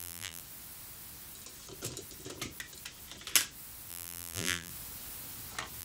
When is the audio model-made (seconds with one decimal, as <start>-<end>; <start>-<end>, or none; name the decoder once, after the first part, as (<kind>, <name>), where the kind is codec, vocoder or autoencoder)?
0.0-0.4 (vocoder, BigVGAN v2); 3.9-4.7